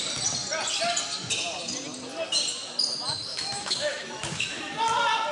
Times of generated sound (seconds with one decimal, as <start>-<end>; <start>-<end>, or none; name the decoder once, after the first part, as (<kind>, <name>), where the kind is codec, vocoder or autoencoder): 3.3-4.6 (autoencoder, DAC-VAE)